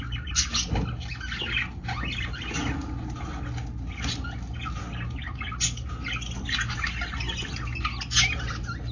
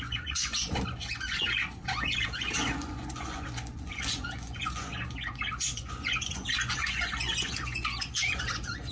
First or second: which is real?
first